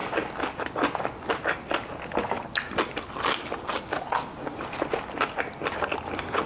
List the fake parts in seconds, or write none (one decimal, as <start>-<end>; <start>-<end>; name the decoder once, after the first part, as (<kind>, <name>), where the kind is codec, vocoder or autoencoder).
none